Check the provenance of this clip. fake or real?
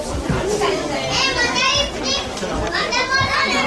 real